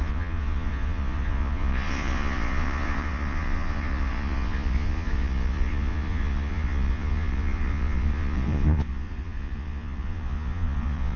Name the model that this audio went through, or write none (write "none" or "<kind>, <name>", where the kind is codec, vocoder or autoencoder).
vocoder, Vocos